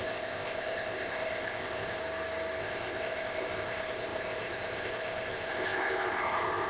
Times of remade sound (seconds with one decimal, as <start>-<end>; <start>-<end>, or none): 0.0-2.0; 2.6-6.7